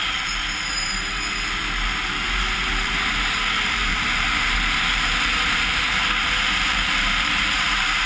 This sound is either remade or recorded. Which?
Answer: remade